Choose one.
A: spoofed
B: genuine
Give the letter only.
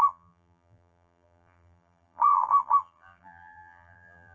A